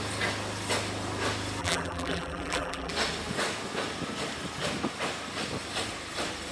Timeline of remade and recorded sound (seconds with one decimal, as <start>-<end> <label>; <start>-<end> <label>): 0.0-1.6 recorded; 1.6-2.9 remade; 2.9-6.5 recorded